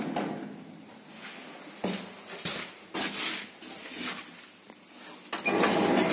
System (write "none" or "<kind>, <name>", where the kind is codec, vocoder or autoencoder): none